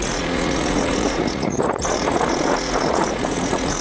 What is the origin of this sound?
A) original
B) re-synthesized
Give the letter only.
B